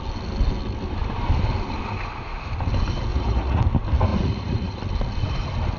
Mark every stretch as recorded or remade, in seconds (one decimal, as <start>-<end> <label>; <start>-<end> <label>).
0.0-3.1 recorded; 3.1-3.6 remade; 3.6-4.1 recorded; 4.1-4.8 remade; 4.8-5.8 recorded